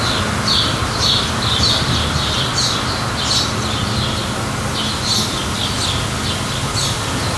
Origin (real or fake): real